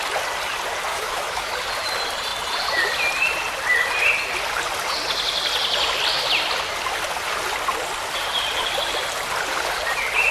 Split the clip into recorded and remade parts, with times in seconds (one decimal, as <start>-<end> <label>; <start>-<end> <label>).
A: 0.0-0.9 recorded; 0.9-1.5 remade; 1.5-10.3 recorded